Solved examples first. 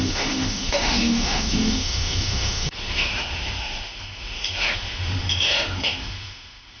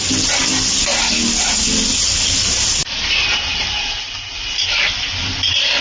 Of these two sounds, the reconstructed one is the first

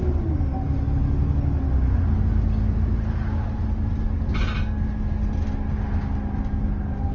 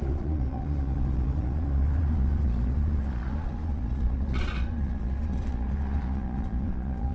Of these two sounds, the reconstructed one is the second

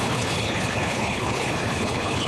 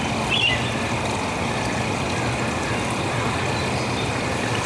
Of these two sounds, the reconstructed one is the first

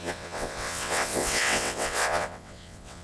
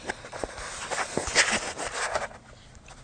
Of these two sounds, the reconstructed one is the first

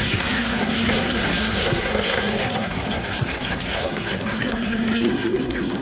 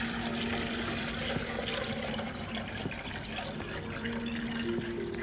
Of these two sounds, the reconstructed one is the first